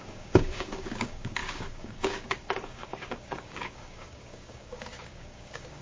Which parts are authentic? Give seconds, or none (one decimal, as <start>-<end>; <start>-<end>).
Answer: none